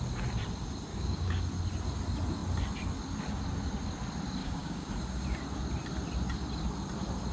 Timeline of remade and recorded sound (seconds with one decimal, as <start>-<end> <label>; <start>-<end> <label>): 0.0-0.9 recorded; 0.9-1.4 remade; 1.4-4.4 recorded; 4.4-4.9 remade; 4.9-7.3 recorded